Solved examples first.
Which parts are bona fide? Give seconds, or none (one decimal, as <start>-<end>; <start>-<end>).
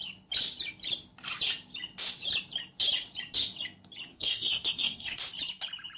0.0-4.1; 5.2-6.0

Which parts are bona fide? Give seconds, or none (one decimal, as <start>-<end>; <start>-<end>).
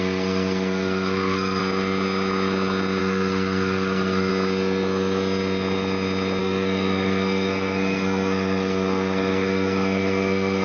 1.6-3.0; 4.3-6.4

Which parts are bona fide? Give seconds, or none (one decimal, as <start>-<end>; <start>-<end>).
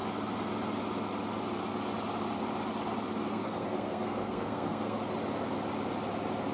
0.0-3.3; 5.0-6.5